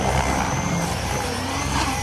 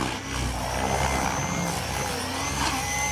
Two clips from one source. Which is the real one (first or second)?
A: second